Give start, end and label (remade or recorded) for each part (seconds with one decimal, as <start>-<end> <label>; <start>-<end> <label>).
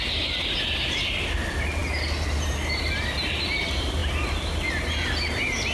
0.0-5.7 recorded